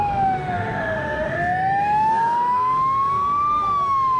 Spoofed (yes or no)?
yes